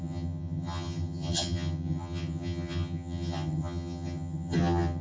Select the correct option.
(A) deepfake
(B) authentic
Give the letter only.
A